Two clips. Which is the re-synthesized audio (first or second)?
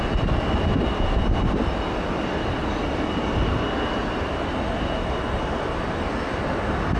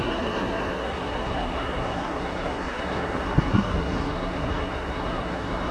second